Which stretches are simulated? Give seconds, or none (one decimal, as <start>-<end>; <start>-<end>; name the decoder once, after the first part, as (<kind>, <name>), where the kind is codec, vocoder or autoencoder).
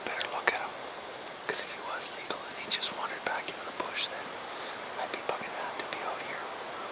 none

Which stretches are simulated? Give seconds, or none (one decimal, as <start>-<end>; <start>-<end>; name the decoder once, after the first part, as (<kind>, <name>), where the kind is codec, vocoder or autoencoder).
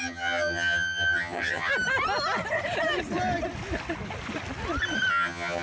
0.0-1.7 (vocoder, HiFi-GAN); 5.1-5.6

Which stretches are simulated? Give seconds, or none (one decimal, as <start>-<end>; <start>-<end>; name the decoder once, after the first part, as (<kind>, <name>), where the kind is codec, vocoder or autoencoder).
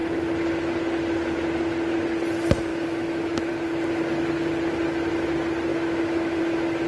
2.7-3.5 (autoencoder, DAC-VAE); 5.7-6.4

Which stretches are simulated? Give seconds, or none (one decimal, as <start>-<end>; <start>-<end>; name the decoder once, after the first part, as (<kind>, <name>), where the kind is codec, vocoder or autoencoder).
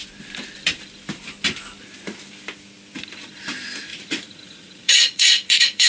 3.9-5.9 (vocoder, Vocos)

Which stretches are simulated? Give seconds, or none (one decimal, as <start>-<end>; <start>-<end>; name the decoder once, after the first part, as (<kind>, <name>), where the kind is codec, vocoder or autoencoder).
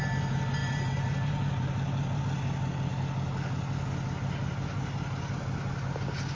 0.6-2.2 (vocoder, BigVGAN v2)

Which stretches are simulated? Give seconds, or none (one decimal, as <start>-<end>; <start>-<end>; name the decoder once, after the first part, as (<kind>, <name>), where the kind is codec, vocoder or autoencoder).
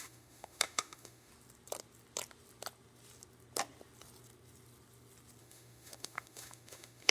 0.0-1.3 (autoencoder, DAC-VAE); 5.4-7.1